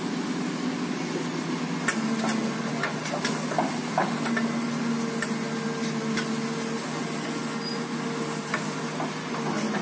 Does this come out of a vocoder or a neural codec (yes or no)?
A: no